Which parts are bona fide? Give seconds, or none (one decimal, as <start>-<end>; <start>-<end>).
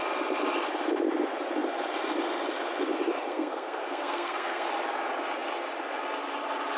0.0-3.3; 4.7-6.8